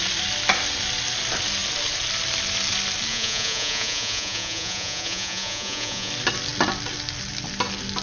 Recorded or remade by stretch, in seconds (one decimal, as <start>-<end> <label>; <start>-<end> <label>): 0.0-3.1 recorded; 3.1-6.1 remade; 6.1-8.0 recorded